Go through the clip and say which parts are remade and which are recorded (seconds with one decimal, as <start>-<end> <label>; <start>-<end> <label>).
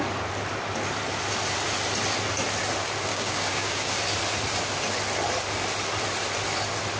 0.0-3.1 recorded; 3.1-3.9 remade; 3.9-7.0 recorded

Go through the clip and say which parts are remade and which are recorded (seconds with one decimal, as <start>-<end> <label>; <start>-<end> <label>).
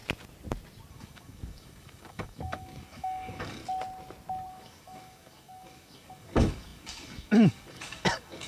0.0-0.9 recorded; 0.9-3.6 remade; 3.6-4.5 recorded; 4.5-8.5 remade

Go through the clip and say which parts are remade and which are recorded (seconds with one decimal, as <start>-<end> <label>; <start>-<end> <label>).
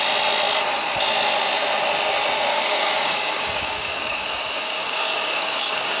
0.0-2.5 recorded; 2.5-6.0 remade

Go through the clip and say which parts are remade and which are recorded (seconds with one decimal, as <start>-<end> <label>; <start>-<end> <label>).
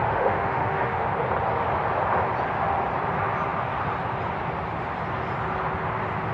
0.0-1.1 remade; 1.1-6.3 recorded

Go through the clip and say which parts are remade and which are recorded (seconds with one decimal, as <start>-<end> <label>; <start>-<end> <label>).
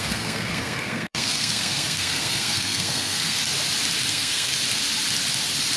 0.0-3.4 remade; 3.4-4.1 recorded; 4.1-4.5 remade; 4.5-5.8 recorded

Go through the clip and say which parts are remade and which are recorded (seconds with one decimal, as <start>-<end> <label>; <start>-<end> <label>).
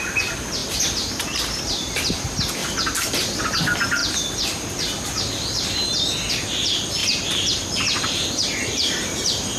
0.0-2.6 recorded; 2.6-3.4 remade; 3.4-7.0 recorded; 7.0-9.6 remade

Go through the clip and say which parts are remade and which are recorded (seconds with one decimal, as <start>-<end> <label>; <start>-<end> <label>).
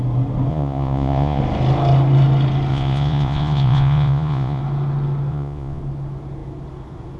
0.0-0.5 recorded; 0.5-1.4 remade; 1.4-2.7 recorded; 2.7-4.6 remade; 4.6-5.3 recorded; 5.3-5.8 remade; 5.8-7.2 recorded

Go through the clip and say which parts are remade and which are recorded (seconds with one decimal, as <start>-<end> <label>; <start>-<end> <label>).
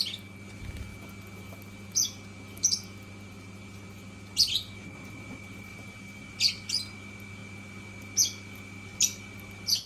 0.0-5.7 recorded; 5.7-6.2 remade; 6.2-9.9 recorded